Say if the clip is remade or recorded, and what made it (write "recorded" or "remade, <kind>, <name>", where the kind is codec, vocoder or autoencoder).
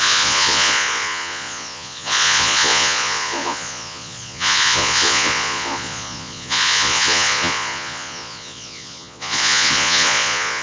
remade, vocoder, Vocos